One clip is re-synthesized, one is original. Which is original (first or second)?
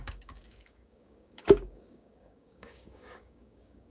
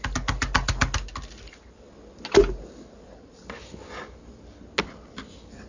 second